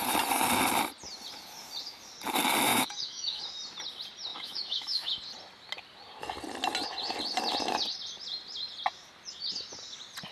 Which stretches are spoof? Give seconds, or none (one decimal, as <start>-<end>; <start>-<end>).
2.7-3.4; 4.3-5.2